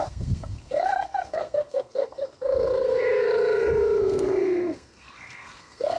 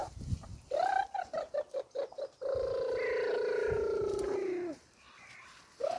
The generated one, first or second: first